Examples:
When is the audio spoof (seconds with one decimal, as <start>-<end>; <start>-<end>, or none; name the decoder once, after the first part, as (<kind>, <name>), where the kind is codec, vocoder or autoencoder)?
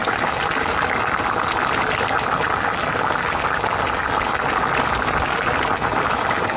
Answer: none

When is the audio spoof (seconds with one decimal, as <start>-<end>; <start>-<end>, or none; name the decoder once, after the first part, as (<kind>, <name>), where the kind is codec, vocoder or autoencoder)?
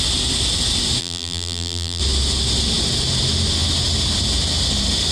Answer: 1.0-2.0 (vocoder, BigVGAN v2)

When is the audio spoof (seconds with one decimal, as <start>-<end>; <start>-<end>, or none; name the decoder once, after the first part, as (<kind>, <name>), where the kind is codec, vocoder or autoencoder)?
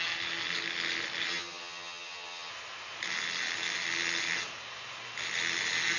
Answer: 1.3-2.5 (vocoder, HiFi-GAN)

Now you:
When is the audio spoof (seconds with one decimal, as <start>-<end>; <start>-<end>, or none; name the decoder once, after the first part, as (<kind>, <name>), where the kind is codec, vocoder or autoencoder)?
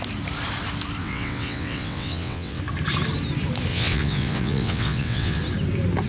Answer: 1.0-2.6 (vocoder, WaveNeXt); 3.7-5.4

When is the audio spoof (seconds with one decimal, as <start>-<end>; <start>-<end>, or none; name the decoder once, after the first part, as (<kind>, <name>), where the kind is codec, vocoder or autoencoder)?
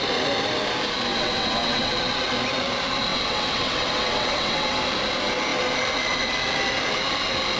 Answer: 1.1-1.9 (vocoder, WaveNeXt); 3.1-4.8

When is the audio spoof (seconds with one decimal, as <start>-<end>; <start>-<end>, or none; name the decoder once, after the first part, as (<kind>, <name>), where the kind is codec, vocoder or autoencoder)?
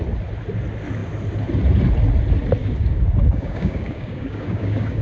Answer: 2.6-5.0 (codec, DAC)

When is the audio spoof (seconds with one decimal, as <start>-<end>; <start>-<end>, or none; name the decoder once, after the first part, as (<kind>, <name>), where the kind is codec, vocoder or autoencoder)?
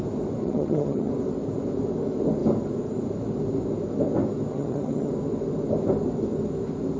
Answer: 0.4-1.1 (vocoder, HiFi-GAN); 4.5-5.1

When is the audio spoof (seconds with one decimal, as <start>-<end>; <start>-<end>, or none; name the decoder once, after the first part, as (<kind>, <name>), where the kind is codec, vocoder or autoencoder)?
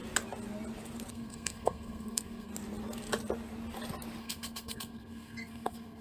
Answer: 1.1-2.5 (codec, SNAC); 4.2-6.0